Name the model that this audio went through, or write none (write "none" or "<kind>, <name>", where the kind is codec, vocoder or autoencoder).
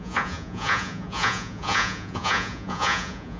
vocoder, Vocos